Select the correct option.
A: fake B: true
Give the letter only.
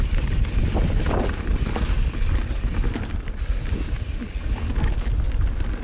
B